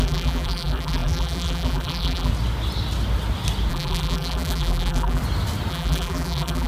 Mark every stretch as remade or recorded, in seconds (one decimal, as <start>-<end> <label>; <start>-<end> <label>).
0.0-2.3 remade; 2.3-3.7 recorded; 3.7-5.2 remade; 5.2-5.7 recorded; 5.7-6.7 remade